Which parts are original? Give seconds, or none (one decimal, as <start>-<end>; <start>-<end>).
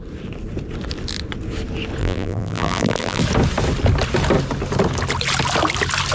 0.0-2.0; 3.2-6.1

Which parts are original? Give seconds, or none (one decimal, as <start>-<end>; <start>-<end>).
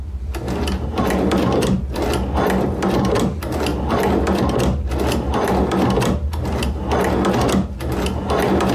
0.0-8.7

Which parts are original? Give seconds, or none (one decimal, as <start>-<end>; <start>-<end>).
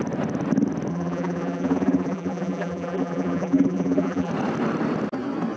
0.0-0.9; 4.3-5.6